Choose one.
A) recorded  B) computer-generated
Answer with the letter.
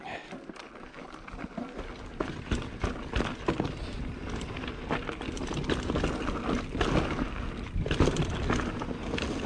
A